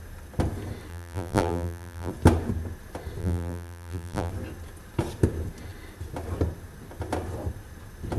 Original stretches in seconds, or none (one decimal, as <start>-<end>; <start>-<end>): 0.0-0.9; 2.1-3.2; 4.3-8.2